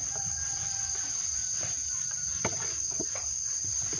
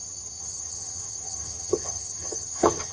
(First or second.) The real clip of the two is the first